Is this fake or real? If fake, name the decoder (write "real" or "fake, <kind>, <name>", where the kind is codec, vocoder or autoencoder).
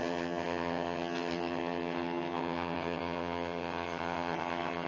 fake, vocoder, HiFi-GAN